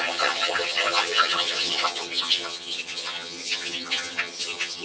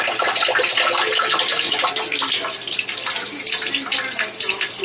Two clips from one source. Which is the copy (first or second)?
first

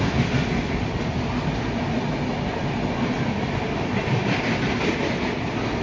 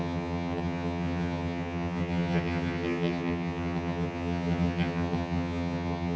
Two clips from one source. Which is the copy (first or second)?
second